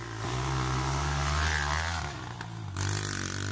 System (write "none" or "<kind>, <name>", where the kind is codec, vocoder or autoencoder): none